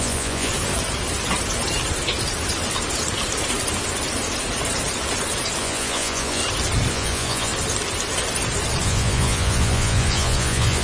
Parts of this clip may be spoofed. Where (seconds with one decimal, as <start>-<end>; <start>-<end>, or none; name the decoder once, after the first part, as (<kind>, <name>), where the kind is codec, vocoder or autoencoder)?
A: 0.0-0.5 (vocoder, Vocos); 5.6-6.4; 6.9-7.5; 8.8-10.8